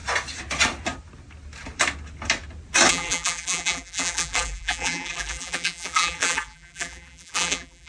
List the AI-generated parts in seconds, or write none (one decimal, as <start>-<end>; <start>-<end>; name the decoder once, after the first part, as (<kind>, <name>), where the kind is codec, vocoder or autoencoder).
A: 2.9-7.9 (vocoder, BigVGAN v2)